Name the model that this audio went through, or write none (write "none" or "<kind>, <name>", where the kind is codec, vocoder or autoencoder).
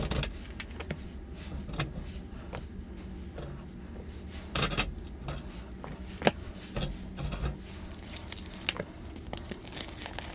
none